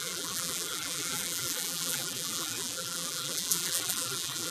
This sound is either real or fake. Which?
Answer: fake